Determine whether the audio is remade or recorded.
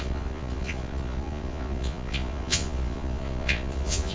remade